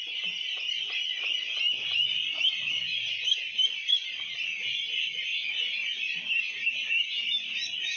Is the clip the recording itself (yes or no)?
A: yes